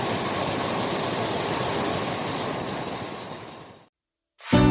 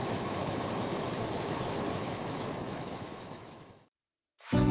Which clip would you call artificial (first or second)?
second